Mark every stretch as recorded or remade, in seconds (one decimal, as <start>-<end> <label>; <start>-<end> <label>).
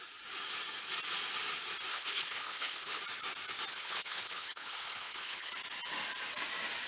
0.0-1.9 recorded; 1.9-3.0 remade; 3.0-3.7 recorded; 3.7-5.5 remade; 5.5-6.9 recorded